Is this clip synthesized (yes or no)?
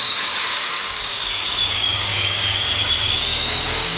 yes